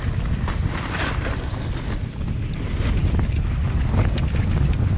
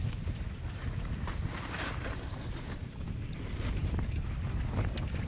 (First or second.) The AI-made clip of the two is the second